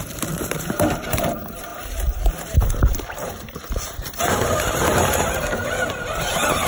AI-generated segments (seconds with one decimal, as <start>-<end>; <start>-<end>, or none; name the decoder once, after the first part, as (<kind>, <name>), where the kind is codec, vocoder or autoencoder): 0.0-6.7 (vocoder, BigVGAN v2)